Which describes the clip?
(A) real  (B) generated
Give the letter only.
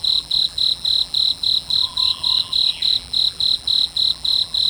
B